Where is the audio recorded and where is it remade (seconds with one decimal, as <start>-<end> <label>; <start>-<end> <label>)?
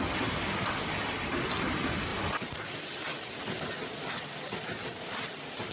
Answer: 0.0-5.7 recorded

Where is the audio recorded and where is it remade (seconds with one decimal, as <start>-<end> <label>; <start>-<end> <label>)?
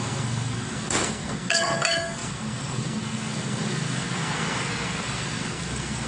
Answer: 0.0-6.1 remade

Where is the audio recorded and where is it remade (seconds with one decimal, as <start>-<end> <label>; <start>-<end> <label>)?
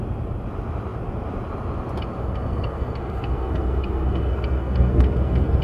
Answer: 0.0-2.2 recorded; 2.2-5.6 remade